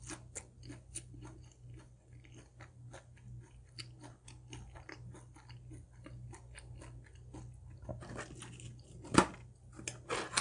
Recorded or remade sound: recorded